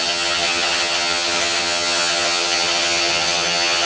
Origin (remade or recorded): remade